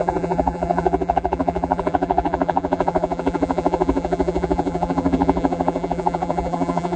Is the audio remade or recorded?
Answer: remade